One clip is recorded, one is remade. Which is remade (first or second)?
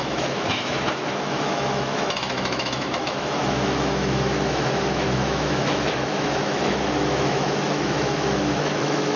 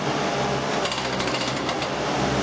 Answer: first